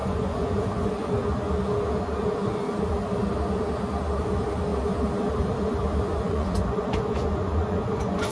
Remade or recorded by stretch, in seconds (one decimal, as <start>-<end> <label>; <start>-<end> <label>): 0.0-1.1 remade; 1.1-6.1 recorded; 6.1-8.3 remade